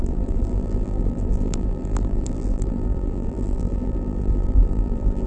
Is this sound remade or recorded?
remade